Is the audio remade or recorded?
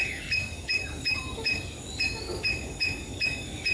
remade